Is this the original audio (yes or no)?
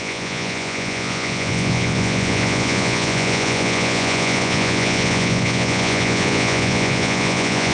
no